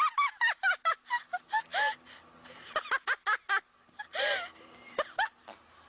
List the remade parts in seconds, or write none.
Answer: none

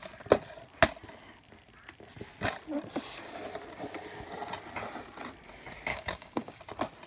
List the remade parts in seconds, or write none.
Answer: 5.9-6.6 (codec, DAC)

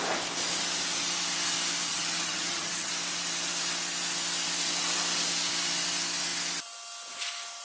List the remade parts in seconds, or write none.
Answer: 1.9-2.9 (vocoder, HiFi-GAN)

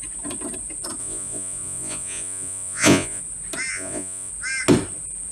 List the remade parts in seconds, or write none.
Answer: 1.0-3.2 (vocoder, Vocos); 3.7-4.3

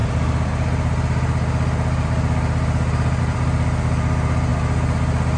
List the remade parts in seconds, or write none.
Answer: none

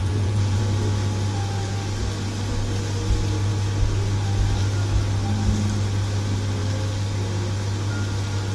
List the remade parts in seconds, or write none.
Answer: 0.0-0.6 (vocoder, Vocos)

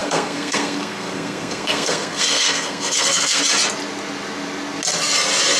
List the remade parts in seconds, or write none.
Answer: 0.0-3.4 (codec, SNAC)